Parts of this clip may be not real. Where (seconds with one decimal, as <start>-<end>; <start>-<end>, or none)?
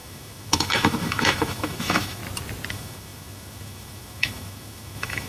0.0-2.2; 2.7-5.3